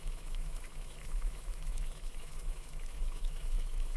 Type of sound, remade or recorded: remade